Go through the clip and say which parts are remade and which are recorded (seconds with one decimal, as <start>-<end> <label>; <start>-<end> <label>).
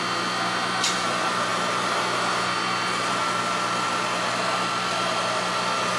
0.0-6.0 recorded